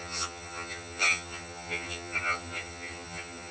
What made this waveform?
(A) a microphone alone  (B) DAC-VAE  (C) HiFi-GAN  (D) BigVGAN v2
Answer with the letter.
C